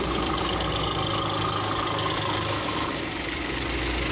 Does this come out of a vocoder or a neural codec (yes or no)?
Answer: yes